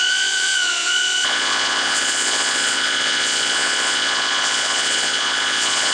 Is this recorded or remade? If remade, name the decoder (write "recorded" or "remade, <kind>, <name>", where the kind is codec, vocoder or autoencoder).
remade, vocoder, Vocos